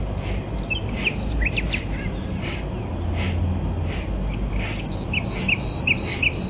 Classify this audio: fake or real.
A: real